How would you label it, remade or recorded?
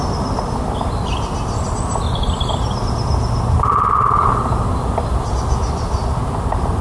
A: recorded